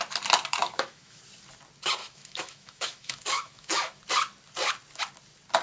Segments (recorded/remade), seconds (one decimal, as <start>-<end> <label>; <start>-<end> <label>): 0.0-0.6 recorded; 0.6-1.2 remade; 1.2-2.0 recorded; 2.0-4.0 remade; 4.0-5.6 recorded